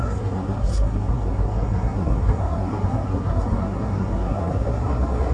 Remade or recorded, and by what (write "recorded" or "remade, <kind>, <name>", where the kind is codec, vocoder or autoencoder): remade, codec, SNAC